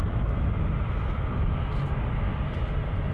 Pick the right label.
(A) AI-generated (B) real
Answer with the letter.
B